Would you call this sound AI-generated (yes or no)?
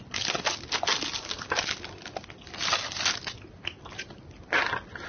no